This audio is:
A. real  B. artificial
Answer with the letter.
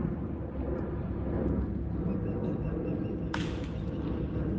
A